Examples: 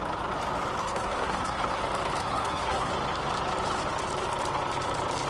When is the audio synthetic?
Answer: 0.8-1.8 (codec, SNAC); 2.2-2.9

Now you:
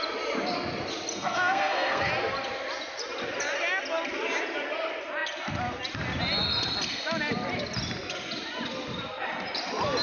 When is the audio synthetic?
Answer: 1.1-2.1 (codec, SNAC)

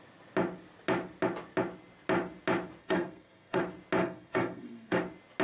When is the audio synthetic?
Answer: 2.8-3.6 (codec, SNAC); 4.0-5.0

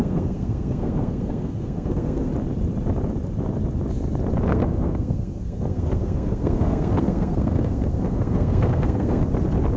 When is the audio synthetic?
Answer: 0.0-2.3 (codec, SNAC); 4.5-9.2

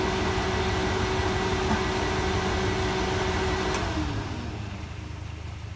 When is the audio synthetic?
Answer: none

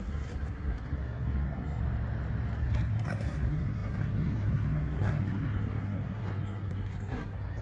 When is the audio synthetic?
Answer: 0.0-1.8 (codec, SNAC); 2.6-7.6